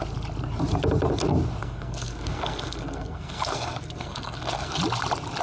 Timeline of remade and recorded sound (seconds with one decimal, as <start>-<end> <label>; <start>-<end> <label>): 0.0-1.6 recorded; 1.6-4.8 remade; 4.8-5.4 recorded